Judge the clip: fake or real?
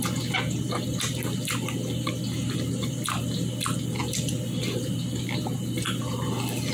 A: real